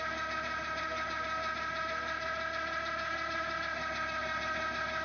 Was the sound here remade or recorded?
recorded